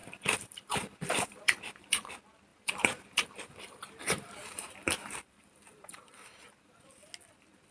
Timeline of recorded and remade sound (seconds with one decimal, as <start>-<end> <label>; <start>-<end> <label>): 0.0-2.1 remade; 2.1-2.5 recorded; 2.5-7.1 remade; 7.1-7.7 recorded